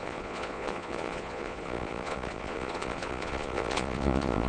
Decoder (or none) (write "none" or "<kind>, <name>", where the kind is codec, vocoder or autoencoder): vocoder, Vocos